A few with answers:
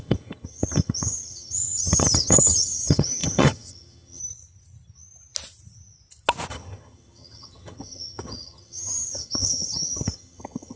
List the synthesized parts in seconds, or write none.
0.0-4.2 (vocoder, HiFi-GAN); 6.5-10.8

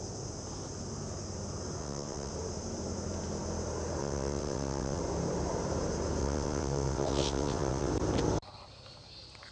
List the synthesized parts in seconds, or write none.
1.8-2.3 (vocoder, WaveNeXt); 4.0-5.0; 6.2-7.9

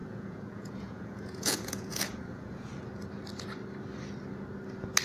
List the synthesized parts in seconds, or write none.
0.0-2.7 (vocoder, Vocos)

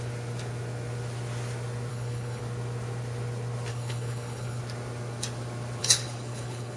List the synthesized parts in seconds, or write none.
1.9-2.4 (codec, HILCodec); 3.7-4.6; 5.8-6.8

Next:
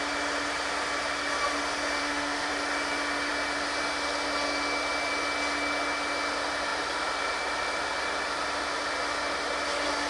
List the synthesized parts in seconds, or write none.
2.0-2.5 (autoencoder, DAC-VAE)

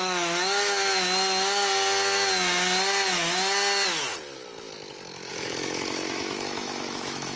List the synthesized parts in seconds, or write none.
0.0-0.9 (autoencoder, DAC-VAE); 5.3-7.4